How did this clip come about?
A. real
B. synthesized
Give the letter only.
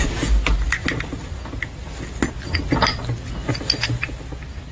A